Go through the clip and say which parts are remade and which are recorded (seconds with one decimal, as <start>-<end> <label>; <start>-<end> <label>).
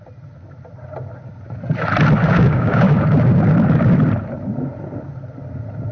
0.0-2.3 recorded; 2.3-3.0 remade; 3.0-5.9 recorded